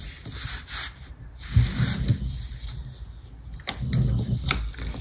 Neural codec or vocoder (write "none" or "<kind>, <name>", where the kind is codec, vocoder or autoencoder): none